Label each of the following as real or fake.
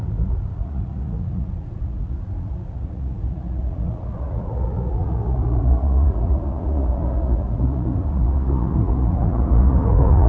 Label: fake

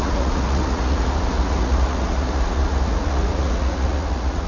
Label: fake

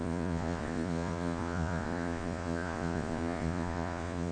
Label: fake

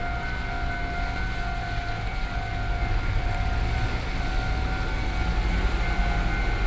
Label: real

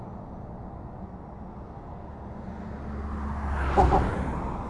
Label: real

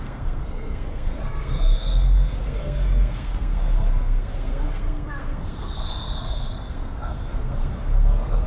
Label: fake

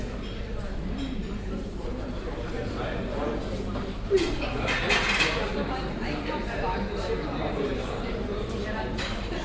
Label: fake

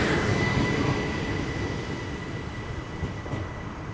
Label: real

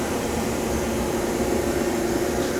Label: real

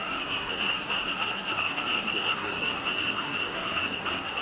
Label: fake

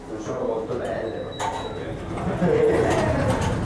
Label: real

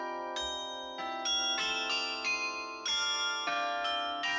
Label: real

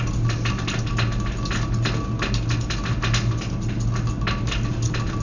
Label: real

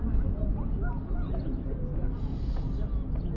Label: real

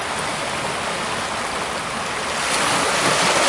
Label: real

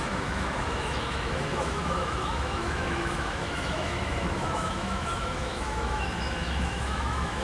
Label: fake